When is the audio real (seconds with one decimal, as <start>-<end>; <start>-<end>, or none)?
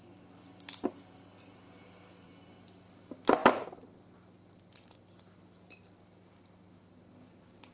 0.0-7.7